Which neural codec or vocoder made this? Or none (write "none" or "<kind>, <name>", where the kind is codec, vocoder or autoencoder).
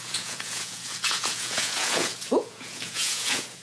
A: vocoder, Vocos